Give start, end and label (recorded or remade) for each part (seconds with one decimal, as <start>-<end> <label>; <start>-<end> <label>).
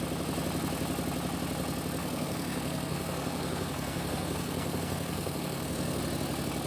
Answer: 0.0-2.0 recorded; 2.0-6.0 remade; 6.0-6.7 recorded